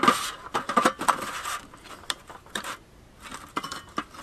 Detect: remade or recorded recorded